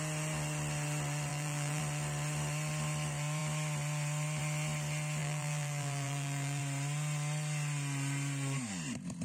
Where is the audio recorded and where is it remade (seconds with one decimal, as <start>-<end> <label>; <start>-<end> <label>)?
0.0-1.3 recorded; 1.3-1.8 remade; 1.8-5.2 recorded; 5.2-6.6 remade; 6.6-9.2 recorded